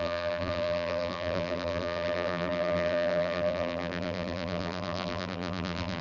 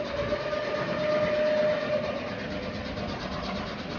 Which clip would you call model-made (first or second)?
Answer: first